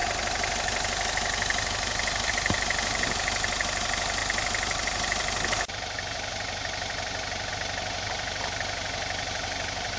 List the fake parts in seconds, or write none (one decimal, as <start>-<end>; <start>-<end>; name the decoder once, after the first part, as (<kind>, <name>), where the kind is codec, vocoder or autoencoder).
none